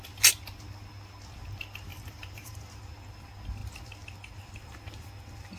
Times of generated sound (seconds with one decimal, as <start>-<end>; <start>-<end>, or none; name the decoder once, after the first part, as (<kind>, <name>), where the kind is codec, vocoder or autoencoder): 1.9-2.8 (vocoder, BigVGAN v2)